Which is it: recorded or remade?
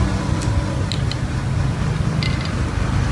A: recorded